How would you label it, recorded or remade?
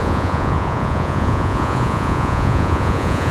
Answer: remade